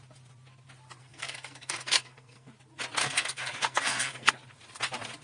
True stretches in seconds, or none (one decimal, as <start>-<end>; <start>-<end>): 0.0-1.0; 2.5-3.0; 4.3-5.2